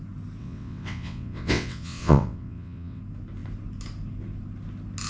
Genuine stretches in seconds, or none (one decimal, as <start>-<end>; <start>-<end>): 0.0-0.4; 3.0-5.1